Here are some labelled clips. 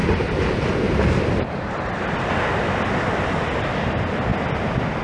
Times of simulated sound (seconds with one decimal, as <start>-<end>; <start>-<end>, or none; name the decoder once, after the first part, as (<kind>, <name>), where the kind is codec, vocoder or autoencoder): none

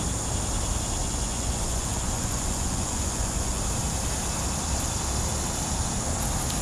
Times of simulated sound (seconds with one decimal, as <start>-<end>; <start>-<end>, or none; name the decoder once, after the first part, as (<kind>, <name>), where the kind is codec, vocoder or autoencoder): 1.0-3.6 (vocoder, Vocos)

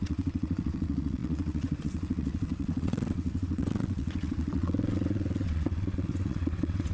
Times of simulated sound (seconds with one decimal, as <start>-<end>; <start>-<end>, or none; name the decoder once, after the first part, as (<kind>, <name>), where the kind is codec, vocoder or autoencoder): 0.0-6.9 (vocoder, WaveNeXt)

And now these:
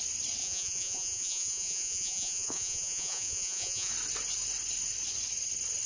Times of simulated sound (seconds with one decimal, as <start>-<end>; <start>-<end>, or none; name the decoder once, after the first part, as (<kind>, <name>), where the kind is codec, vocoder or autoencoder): 0.4-3.9 (vocoder, Vocos)

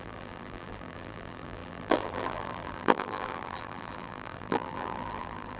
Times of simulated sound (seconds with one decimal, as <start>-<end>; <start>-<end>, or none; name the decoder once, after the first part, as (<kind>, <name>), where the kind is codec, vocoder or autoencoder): 0.0-5.6 (vocoder, BigVGAN v2)